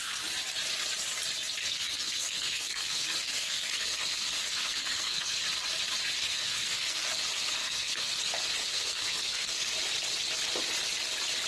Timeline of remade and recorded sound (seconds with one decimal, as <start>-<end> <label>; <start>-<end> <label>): 0.0-1.6 recorded; 1.6-5.4 remade; 5.4-6.2 recorded; 6.2-7.1 remade; 7.1-7.6 recorded; 7.6-8.2 remade; 8.2-8.6 recorded; 8.6-9.7 remade; 9.7-11.5 recorded